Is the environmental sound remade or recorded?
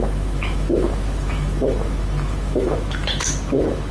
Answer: remade